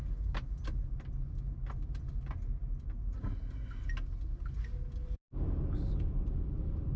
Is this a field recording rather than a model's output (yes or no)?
yes